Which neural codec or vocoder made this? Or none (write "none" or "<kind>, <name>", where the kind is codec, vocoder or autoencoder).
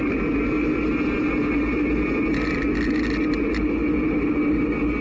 none